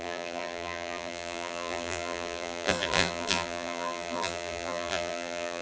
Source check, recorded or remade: remade